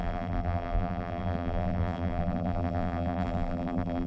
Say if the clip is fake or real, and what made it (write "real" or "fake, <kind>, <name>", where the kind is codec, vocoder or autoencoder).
fake, vocoder, BigVGAN v2